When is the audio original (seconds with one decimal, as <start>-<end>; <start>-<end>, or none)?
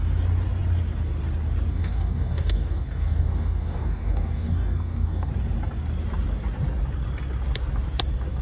0.0-1.7; 5.3-8.4